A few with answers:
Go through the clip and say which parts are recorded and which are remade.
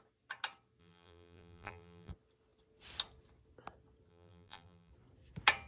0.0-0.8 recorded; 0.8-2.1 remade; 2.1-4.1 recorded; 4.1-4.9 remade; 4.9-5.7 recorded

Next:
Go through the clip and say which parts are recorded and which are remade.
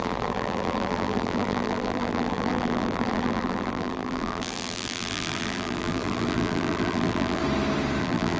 0.0-7.4 remade; 7.4-8.0 recorded; 8.0-8.4 remade